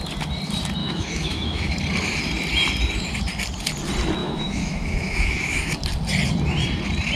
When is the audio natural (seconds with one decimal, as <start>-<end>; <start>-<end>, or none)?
0.0-0.8; 1.7-4.2; 5.7-7.2